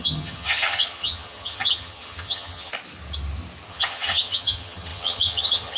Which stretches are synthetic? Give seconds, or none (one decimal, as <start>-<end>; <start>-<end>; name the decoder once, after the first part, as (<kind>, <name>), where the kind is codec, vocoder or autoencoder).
0.0-2.7 (vocoder, HiFi-GAN); 3.7-5.8